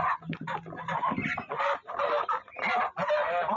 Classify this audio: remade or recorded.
recorded